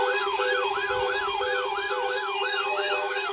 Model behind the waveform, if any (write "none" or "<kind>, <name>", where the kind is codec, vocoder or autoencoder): codec, DAC